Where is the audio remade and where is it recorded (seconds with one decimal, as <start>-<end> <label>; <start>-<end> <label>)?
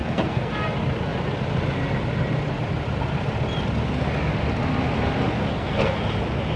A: 0.0-0.5 remade; 0.5-5.5 recorded; 5.5-6.0 remade; 6.0-6.6 recorded